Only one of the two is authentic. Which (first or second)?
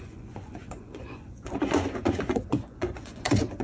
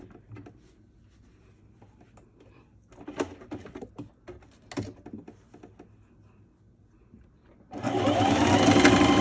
second